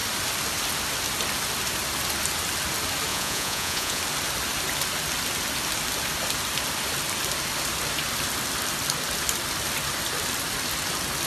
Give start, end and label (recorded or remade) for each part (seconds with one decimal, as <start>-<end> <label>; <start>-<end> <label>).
0.0-3.1 recorded; 3.1-4.0 remade; 4.0-11.3 recorded